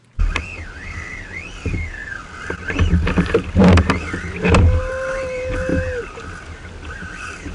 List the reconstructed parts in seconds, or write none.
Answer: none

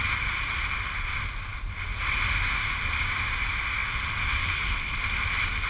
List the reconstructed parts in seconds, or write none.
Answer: none